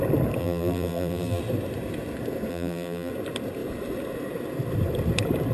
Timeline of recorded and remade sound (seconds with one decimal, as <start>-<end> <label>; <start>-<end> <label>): 0.0-0.4 recorded; 0.4-1.4 remade; 1.4-2.5 recorded; 2.5-3.1 remade; 3.1-5.5 recorded